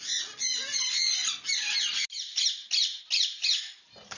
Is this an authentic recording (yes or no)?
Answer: yes